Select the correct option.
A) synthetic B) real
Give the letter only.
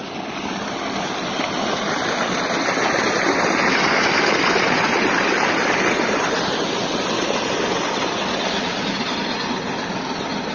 B